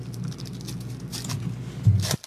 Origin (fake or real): real